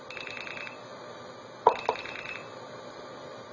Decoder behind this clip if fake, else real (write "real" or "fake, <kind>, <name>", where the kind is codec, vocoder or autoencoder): fake, vocoder, BigVGAN v2